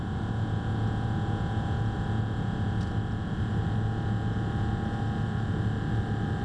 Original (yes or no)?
yes